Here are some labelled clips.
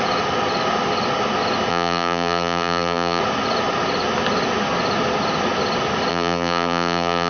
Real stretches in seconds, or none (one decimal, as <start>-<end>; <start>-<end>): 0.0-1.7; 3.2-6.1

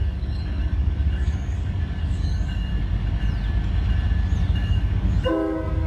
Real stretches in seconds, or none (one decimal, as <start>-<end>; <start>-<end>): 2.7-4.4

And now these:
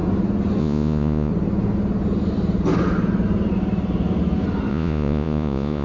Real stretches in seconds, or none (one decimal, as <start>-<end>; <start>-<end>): 0.0-0.6; 1.3-4.7

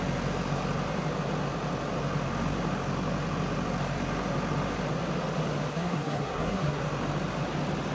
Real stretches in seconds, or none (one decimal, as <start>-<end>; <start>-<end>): 0.0-5.7; 6.8-7.9

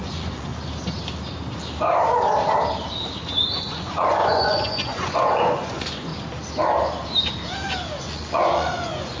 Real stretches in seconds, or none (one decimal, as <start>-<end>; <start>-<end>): 0.5-3.6; 6.1-8.0